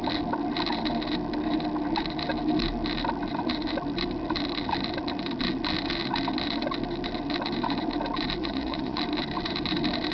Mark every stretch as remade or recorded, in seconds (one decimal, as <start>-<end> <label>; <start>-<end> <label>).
0.0-8.4 recorded; 8.4-9.0 remade; 9.0-10.1 recorded